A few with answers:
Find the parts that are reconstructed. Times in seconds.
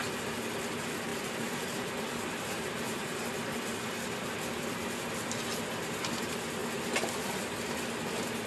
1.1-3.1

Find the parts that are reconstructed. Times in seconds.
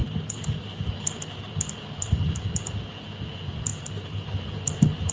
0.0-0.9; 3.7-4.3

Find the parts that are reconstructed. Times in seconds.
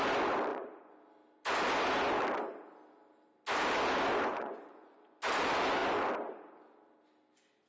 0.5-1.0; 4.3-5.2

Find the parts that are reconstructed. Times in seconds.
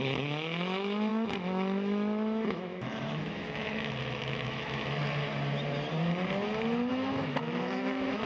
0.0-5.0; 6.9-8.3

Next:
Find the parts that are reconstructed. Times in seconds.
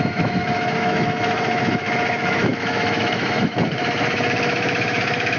0.0-5.4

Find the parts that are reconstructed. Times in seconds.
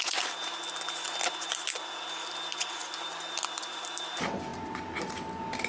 none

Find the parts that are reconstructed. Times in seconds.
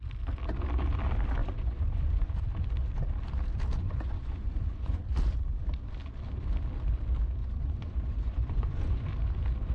1.4-2.3; 3.8-5.0; 7.4-9.1